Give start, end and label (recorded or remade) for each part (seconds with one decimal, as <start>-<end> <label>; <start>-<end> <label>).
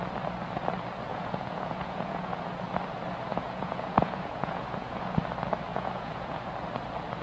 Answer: 0.0-1.1 recorded; 1.1-2.4 remade; 2.4-3.3 recorded; 3.3-5.2 remade; 5.2-5.7 recorded; 5.7-6.5 remade; 6.5-7.2 recorded